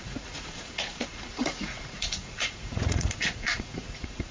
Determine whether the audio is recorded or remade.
remade